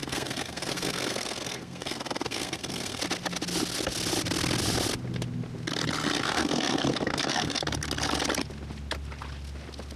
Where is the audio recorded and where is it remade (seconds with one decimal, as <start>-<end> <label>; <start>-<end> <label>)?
0.0-3.0 remade; 3.0-6.2 recorded; 6.2-7.6 remade; 7.6-10.0 recorded